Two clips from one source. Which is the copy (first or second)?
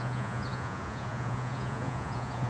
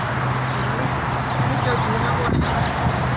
first